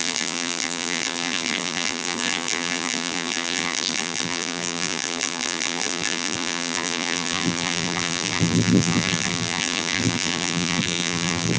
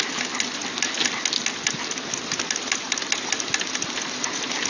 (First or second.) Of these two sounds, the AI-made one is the first